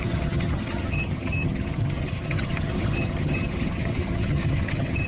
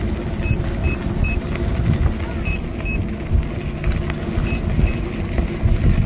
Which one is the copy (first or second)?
first